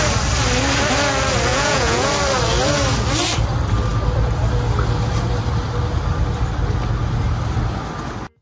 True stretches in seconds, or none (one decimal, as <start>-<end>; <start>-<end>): 0.0-1.5; 2.1-8.4